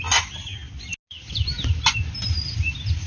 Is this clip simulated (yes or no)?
no